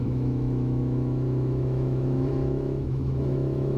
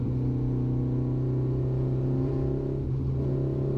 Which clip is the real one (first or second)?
second